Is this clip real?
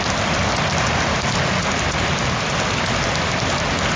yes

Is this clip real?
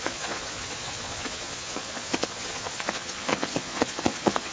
no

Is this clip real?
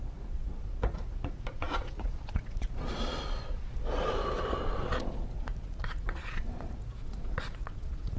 no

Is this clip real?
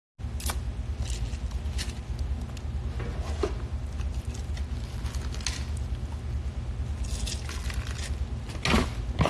yes